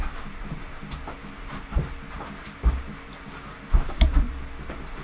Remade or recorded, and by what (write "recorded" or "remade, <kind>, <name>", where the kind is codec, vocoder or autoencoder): recorded